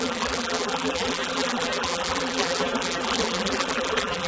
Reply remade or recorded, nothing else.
remade